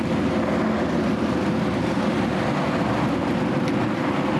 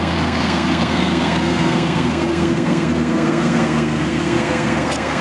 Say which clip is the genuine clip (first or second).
first